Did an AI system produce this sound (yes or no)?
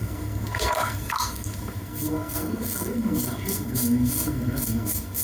yes